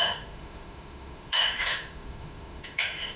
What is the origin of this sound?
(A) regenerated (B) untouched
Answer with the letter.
A